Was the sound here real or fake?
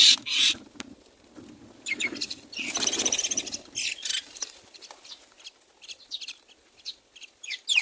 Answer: real